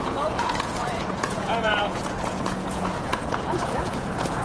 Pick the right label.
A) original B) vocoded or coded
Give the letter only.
B